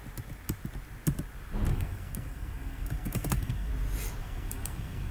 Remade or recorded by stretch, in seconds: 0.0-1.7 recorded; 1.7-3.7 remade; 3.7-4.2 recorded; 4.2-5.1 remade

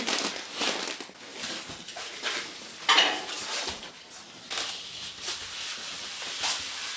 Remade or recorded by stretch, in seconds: 0.0-1.3 recorded; 1.3-3.9 remade; 3.9-7.0 recorded

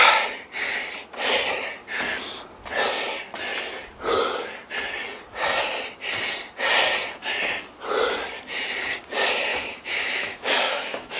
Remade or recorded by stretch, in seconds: 0.0-9.5 recorded; 9.5-11.2 remade

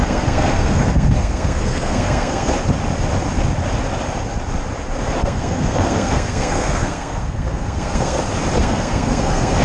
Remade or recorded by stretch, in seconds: 0.0-2.5 remade; 2.5-5.2 recorded; 5.2-8.2 remade; 8.2-8.6 recorded; 8.6-9.6 remade

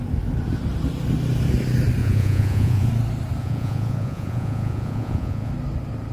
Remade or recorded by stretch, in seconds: 0.0-2.0 recorded; 2.0-2.9 remade; 2.9-3.4 recorded; 3.4-5.5 remade; 5.5-6.1 recorded

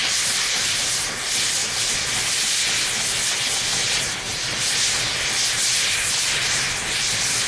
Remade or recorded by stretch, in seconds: 0.0-7.5 recorded

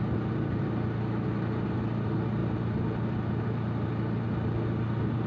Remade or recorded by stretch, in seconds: 0.0-5.3 recorded